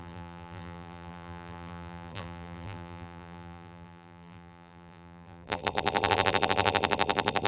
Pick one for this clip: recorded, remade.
remade